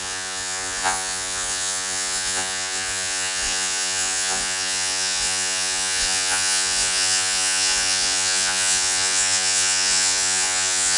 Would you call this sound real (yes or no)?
no